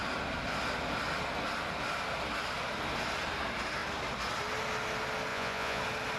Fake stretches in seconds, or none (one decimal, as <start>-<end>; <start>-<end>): 5.3-5.8